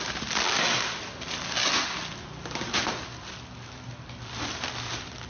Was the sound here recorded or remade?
recorded